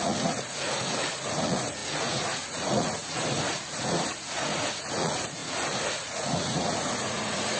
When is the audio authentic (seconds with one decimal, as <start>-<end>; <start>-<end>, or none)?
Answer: none